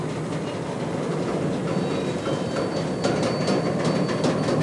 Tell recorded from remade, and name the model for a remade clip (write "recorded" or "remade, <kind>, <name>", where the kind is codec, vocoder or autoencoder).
recorded